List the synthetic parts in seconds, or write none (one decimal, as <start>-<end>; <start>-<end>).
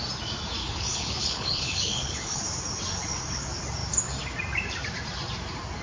0.6-2.4